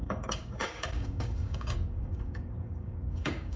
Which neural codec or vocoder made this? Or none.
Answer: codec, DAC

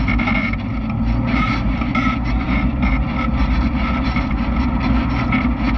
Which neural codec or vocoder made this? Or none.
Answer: none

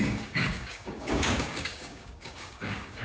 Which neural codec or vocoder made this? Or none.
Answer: codec, DAC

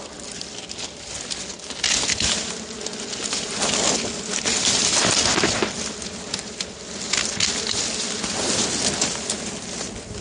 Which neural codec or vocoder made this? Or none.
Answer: none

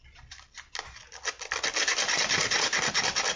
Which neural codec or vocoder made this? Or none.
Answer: none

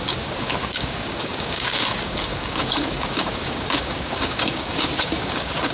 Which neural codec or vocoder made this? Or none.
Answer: codec, DAC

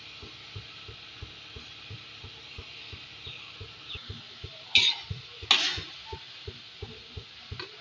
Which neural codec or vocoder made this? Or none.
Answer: none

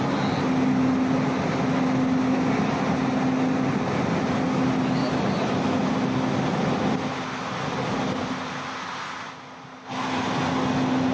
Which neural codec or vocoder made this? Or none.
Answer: none